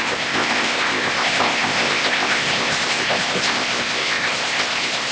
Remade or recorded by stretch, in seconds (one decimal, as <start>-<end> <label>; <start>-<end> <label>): 0.0-5.1 remade